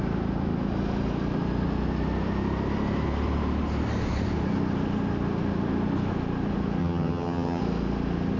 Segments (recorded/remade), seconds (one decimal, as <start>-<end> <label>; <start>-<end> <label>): 0.0-6.8 recorded; 6.8-7.6 remade; 7.6-8.4 recorded